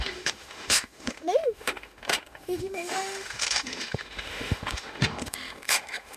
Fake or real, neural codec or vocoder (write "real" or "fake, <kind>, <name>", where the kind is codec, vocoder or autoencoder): fake, autoencoder, DAC-VAE